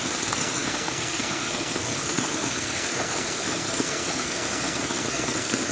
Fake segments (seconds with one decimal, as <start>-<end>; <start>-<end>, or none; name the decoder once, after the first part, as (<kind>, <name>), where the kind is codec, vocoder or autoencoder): 0.0-5.7 (codec, SNAC)